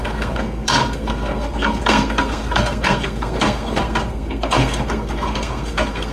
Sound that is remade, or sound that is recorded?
remade